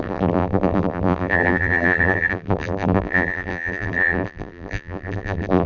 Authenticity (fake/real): fake